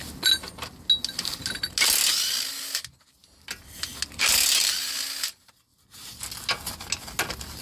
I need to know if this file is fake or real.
real